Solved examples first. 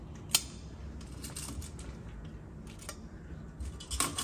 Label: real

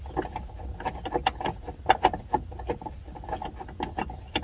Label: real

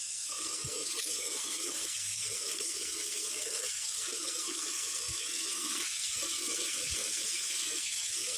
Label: fake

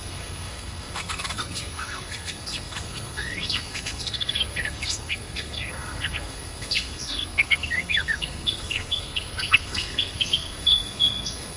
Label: fake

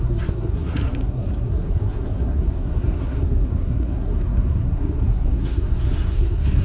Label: fake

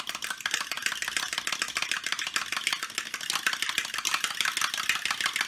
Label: real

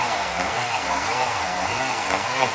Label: fake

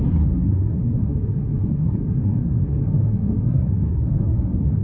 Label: fake